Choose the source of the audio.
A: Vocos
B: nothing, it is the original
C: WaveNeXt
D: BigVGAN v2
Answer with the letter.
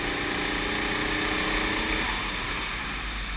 B